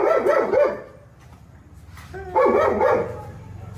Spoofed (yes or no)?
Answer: no